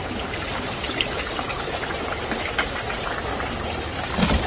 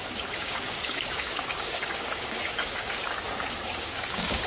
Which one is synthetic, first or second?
second